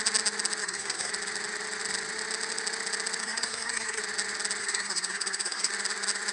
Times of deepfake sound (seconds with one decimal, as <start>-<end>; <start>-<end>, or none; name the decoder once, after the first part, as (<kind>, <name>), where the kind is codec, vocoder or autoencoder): 0.6-1.1 (codec, SNAC); 3.2-4.0; 4.6-5.7